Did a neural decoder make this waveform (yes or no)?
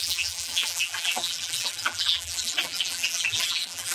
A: yes